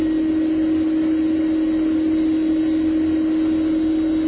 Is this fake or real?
real